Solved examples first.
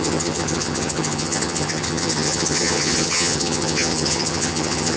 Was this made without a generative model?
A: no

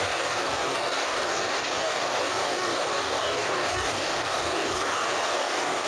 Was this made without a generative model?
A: no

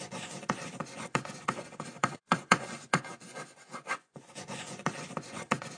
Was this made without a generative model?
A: no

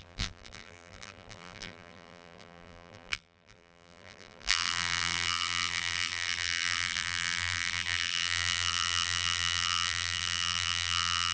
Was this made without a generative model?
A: no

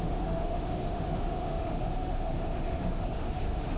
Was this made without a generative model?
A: no